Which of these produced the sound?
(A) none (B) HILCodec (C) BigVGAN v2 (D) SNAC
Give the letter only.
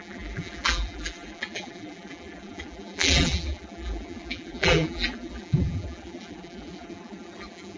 C